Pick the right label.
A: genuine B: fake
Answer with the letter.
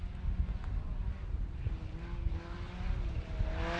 A